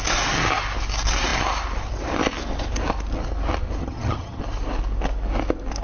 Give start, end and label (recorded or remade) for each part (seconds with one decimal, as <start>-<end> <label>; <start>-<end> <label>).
0.0-3.8 recorded; 3.8-4.4 remade; 4.4-5.8 recorded